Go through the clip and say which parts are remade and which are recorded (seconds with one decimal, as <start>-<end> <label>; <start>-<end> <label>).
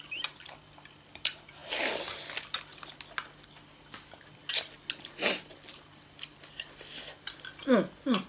0.0-8.3 recorded